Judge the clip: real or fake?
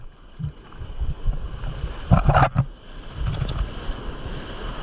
real